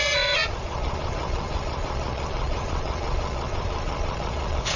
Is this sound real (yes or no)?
no